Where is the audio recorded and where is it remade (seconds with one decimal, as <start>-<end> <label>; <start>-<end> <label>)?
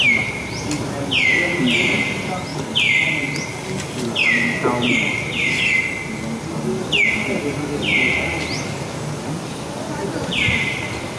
0.0-11.2 recorded